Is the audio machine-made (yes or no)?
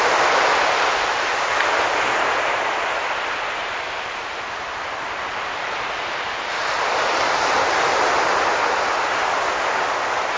no